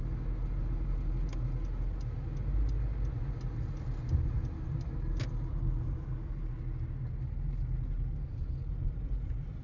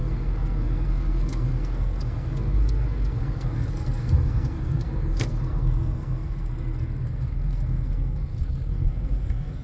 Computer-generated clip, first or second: second